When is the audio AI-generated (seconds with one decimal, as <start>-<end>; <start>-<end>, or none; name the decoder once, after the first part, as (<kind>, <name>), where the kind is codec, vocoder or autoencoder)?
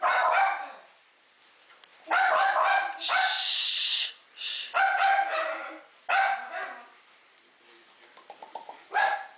none